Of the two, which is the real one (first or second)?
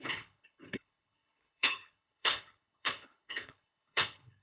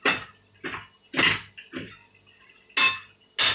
second